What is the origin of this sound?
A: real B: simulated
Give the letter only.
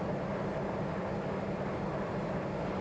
A